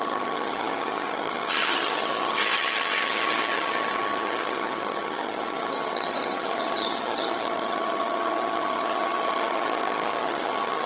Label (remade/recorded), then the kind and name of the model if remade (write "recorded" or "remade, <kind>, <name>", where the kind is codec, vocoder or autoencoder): remade, vocoder, HiFi-GAN